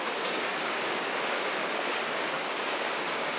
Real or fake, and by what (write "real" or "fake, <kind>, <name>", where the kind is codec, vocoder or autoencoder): fake, codec, DAC